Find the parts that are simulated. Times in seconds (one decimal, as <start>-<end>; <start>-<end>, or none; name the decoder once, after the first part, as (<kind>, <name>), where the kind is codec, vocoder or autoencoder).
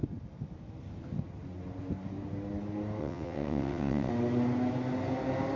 3.0-4.1 (vocoder, WaveNeXt)